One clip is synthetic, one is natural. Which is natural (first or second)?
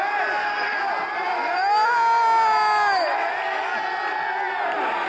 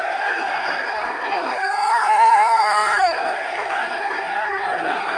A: first